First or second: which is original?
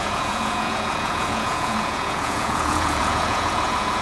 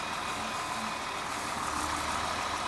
second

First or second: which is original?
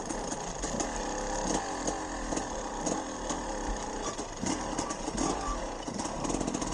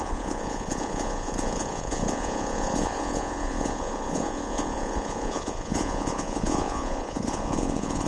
first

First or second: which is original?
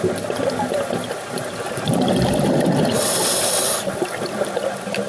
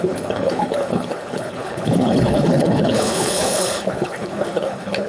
first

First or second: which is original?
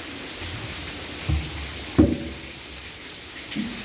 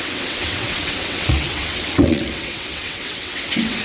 first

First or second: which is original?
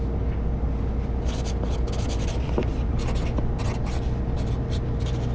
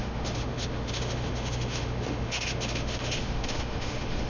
first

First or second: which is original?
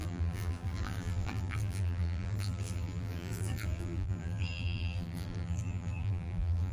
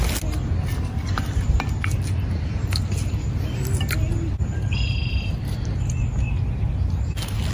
second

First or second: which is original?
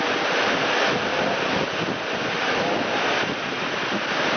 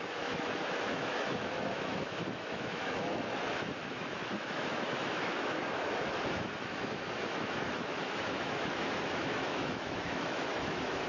first